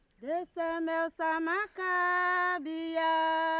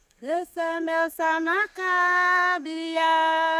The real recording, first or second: first